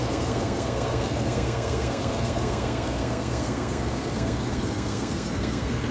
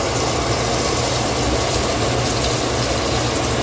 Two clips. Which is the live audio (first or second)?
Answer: second